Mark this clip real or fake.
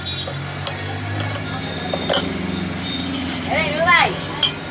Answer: real